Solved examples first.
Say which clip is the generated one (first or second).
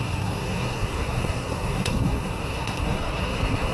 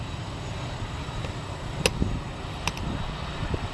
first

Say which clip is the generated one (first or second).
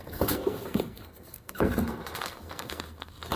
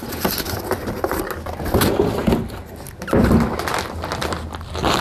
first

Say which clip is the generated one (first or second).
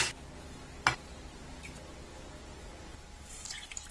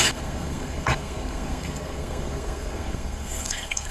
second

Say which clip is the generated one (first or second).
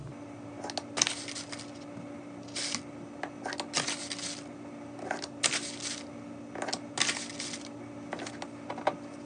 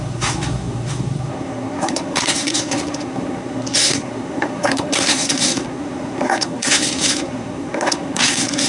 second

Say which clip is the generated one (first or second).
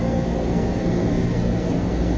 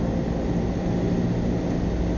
first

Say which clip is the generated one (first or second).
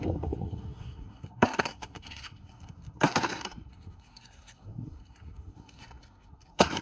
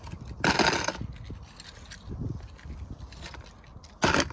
first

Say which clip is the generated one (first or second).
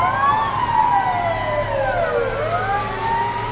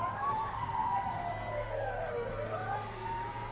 second